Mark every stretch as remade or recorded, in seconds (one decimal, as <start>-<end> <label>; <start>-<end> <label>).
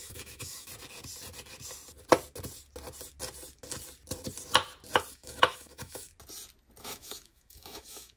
0.0-0.7 remade; 0.7-5.1 recorded; 5.1-6.1 remade; 6.1-6.8 recorded; 6.8-8.2 remade